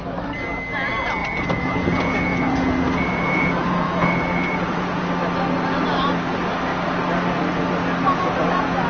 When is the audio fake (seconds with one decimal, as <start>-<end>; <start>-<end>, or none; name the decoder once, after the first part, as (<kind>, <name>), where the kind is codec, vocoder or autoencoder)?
1.2-5.1 (vocoder, Vocos)